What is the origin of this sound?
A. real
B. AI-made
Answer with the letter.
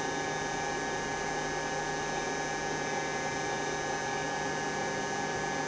A